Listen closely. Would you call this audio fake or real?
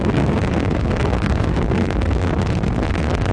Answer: fake